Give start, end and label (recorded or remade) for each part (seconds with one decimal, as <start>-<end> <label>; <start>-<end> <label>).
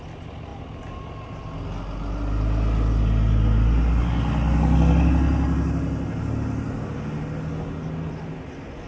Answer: 0.0-8.9 recorded